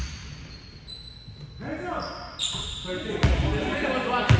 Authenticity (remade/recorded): recorded